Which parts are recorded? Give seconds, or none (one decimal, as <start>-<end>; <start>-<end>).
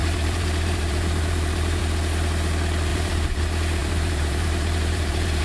1.8-2.9; 3.4-3.8